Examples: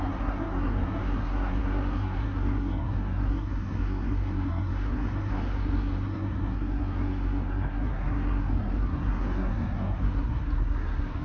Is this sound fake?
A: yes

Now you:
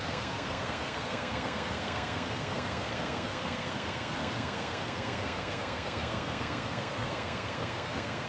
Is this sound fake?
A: yes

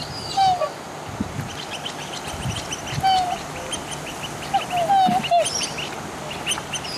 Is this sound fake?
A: no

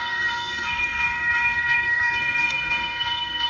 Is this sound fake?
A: yes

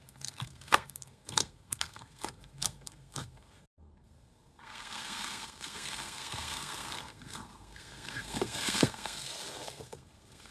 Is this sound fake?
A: yes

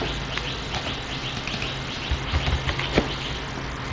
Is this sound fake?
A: no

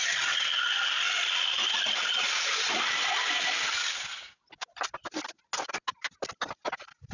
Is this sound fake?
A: no